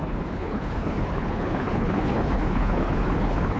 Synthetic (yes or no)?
yes